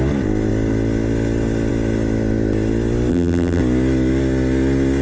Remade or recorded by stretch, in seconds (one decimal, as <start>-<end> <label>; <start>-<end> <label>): 0.0-3.1 recorded; 3.1-3.6 remade; 3.6-5.0 recorded